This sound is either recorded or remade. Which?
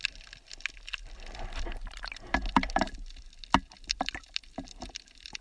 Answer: recorded